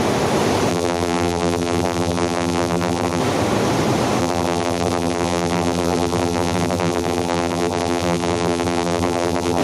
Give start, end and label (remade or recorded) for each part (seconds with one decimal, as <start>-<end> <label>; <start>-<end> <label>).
0.0-0.7 recorded; 0.7-3.2 remade; 3.2-4.2 recorded; 4.2-9.6 remade